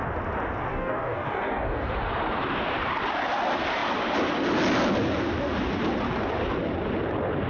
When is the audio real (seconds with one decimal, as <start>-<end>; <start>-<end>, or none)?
0.0-0.7; 1.9-7.5